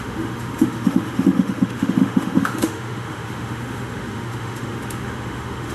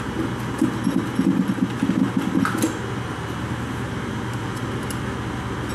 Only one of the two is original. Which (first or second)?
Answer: second